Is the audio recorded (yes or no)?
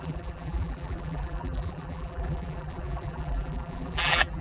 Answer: no